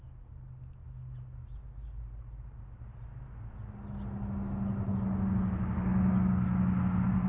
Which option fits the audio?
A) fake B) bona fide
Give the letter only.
B